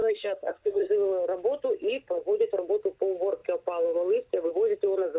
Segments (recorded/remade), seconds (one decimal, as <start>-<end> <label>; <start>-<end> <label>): 0.0-0.9 remade; 0.9-5.2 recorded